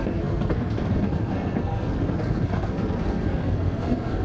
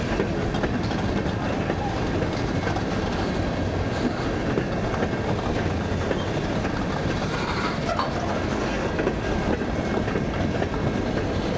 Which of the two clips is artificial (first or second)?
first